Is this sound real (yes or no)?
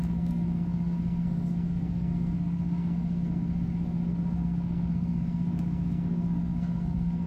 no